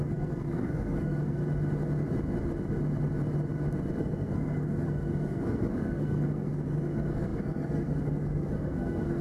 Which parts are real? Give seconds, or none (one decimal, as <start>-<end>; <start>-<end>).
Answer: 1.4-4.0